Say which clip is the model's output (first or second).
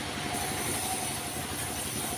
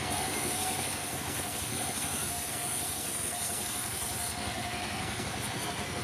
second